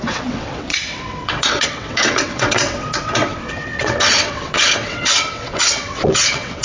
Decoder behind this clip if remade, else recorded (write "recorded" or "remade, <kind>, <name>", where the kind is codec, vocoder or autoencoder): remade, vocoder, WaveNeXt